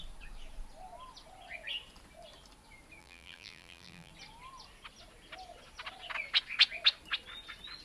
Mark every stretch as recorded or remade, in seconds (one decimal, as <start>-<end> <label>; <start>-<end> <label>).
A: 0.0-3.0 recorded; 3.0-4.1 remade; 4.1-7.8 recorded